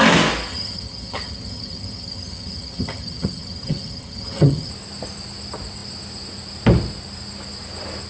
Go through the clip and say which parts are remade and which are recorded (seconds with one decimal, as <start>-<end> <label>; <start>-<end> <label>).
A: 0.0-0.5 recorded; 0.5-4.7 remade; 4.7-8.1 recorded